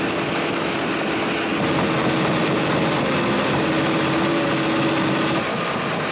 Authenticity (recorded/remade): recorded